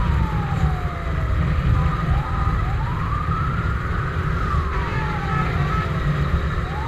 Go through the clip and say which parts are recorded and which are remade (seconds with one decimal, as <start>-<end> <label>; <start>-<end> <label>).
0.0-1.9 recorded; 1.9-5.0 remade; 5.0-6.9 recorded

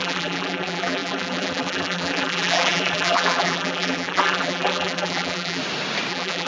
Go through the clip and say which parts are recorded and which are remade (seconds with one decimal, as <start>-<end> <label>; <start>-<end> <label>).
0.0-5.6 remade; 5.6-6.1 recorded; 6.1-6.5 remade

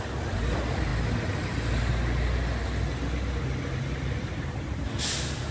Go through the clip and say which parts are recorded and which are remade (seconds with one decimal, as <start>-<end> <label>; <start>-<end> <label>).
0.0-5.5 recorded

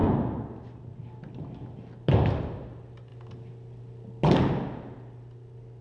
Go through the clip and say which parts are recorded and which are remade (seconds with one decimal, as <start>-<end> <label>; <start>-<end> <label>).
0.0-5.8 recorded

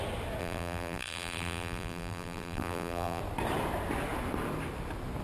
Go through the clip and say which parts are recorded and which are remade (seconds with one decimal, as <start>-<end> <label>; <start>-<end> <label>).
0.0-0.4 recorded; 0.4-3.2 remade; 3.2-5.2 recorded

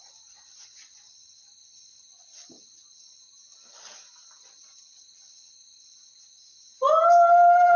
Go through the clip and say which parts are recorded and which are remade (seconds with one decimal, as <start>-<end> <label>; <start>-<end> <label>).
0.0-7.8 recorded

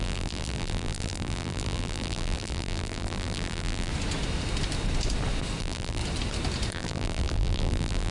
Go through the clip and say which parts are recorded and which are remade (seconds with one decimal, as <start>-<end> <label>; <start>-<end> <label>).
0.0-3.9 remade; 3.9-5.6 recorded; 5.6-6.0 remade; 6.0-6.7 recorded; 6.7-8.1 remade

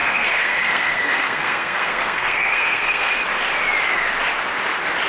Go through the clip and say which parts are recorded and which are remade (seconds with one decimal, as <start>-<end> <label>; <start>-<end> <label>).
0.0-3.1 remade; 3.1-5.1 recorded